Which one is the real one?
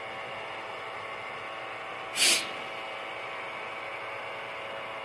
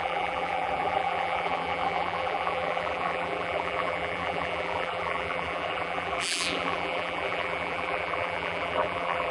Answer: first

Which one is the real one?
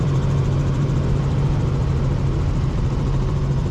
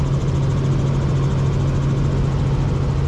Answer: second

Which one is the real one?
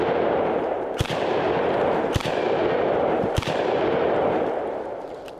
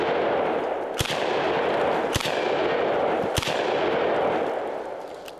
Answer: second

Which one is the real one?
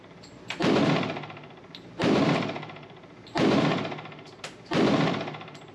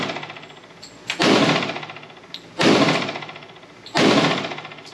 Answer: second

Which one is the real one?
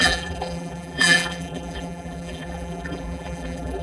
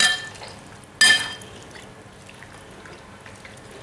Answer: second